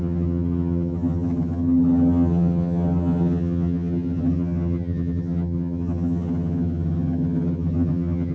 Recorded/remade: remade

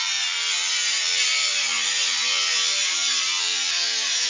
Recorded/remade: remade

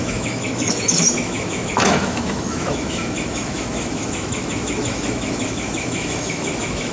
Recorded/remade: remade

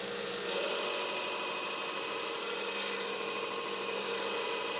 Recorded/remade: recorded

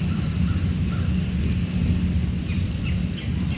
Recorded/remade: recorded